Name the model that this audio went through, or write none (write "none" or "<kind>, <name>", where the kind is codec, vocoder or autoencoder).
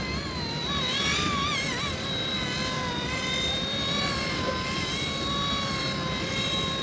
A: vocoder, BigVGAN v2